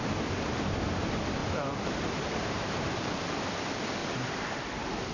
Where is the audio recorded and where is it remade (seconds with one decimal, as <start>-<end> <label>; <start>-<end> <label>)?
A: 0.0-1.4 recorded; 1.4-3.5 remade; 3.5-4.0 recorded; 4.0-5.1 remade

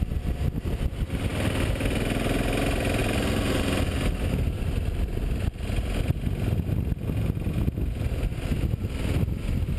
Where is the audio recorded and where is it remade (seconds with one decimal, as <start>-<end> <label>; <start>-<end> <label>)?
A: 0.0-3.0 recorded; 3.0-3.6 remade; 3.6-9.8 recorded

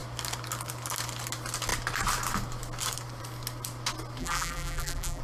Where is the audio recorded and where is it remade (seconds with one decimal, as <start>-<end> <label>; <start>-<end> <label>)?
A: 0.0-4.2 recorded; 4.2-5.2 remade

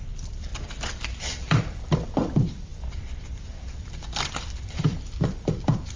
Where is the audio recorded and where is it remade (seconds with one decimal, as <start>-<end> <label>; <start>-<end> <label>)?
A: 0.0-0.5 remade; 0.5-1.2 recorded; 1.2-6.0 remade

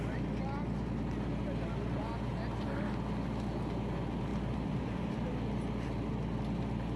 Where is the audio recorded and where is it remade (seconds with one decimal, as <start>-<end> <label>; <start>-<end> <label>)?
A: 0.0-4.3 recorded; 4.3-5.3 remade; 5.3-7.0 recorded

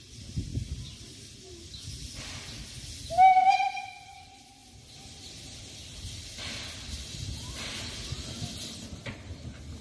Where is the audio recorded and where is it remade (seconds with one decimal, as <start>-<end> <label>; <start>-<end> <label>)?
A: 0.0-9.8 recorded

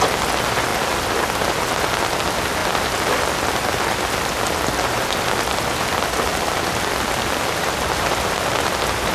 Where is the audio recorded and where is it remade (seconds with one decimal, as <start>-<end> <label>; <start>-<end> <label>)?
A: 0.0-6.3 recorded; 6.3-6.9 remade; 6.9-9.1 recorded

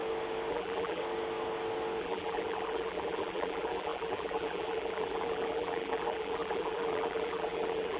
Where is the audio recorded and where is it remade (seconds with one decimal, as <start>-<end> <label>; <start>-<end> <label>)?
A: 0.0-0.5 recorded; 0.5-1.0 remade; 1.0-2.0 recorded; 2.0-8.0 remade